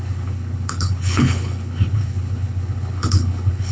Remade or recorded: remade